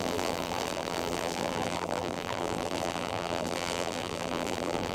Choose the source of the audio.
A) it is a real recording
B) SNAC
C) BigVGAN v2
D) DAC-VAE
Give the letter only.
C